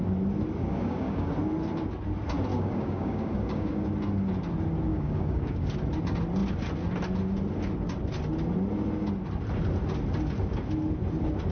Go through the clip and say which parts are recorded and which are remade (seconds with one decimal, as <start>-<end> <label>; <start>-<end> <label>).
0.0-0.6 recorded; 0.6-1.3 remade; 1.3-2.5 recorded; 2.5-3.7 remade; 3.7-4.9 recorded; 4.9-5.7 remade; 5.7-11.5 recorded

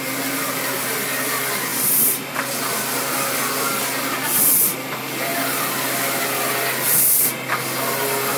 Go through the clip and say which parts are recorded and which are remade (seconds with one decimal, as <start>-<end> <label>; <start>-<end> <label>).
0.0-8.4 remade

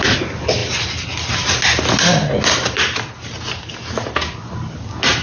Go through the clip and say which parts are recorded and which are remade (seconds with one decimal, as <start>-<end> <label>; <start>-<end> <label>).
0.0-5.2 recorded